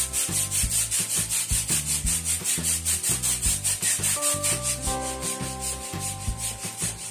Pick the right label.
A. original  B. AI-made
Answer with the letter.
A